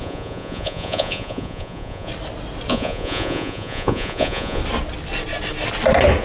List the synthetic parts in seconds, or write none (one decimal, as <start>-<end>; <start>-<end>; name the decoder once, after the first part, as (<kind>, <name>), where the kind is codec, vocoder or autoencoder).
0.0-2.1 (vocoder, Vocos); 2.7-4.6